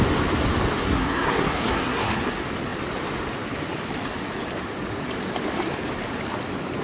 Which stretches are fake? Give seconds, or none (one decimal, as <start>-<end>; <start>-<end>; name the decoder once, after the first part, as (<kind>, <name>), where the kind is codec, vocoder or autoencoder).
0.8-2.1 (codec, SNAC)